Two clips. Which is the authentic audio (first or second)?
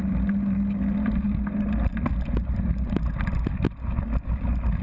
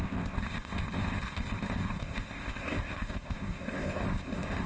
first